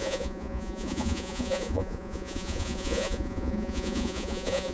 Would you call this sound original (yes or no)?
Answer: no